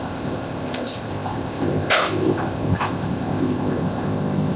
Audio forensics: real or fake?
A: fake